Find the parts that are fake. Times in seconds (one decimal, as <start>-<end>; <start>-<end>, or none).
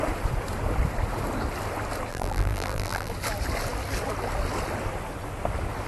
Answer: 2.1-3.1